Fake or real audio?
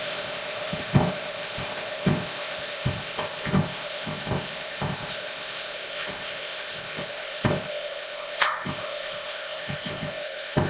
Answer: fake